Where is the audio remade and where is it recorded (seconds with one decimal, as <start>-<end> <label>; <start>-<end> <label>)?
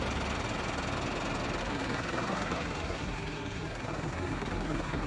0.0-1.6 recorded; 1.6-5.1 remade